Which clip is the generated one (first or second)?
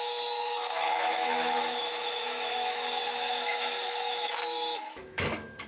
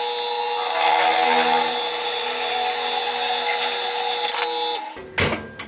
first